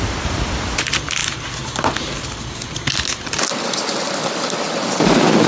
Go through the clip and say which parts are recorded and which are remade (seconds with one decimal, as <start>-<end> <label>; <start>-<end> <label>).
0.0-5.5 recorded